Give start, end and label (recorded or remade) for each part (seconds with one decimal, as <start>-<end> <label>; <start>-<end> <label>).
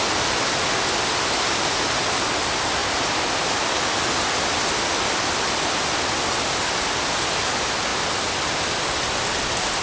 0.0-9.8 recorded